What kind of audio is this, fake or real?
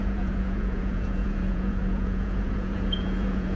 fake